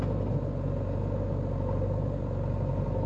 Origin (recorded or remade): recorded